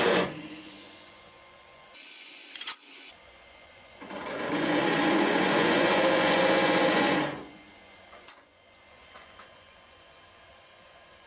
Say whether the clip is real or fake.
fake